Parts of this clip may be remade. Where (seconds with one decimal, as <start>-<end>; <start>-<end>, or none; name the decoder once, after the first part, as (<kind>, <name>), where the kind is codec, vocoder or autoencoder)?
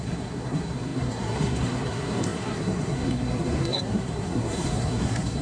0.0-5.4 (codec, SNAC)